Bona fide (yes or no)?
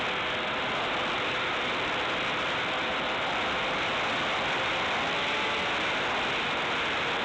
yes